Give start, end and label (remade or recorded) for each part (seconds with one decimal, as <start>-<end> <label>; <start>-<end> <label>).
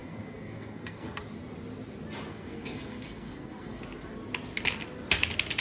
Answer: 0.0-1.2 remade; 1.2-2.3 recorded; 2.3-3.8 remade; 3.8-5.6 recorded